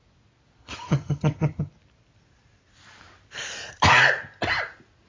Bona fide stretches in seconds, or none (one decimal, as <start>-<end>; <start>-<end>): 0.0-0.6; 1.7-5.1